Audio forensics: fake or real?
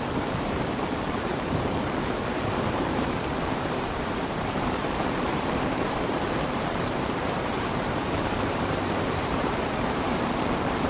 fake